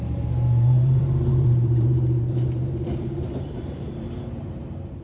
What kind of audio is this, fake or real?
fake